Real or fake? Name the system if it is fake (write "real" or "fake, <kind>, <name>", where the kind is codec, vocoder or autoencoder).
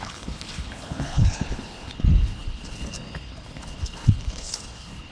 fake, codec, HILCodec